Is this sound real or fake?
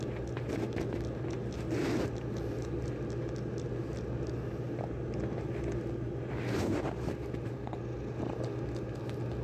real